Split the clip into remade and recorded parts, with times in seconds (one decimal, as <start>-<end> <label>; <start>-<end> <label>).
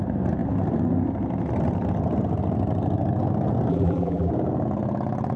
0.0-3.7 recorded; 3.7-4.3 remade; 4.3-5.4 recorded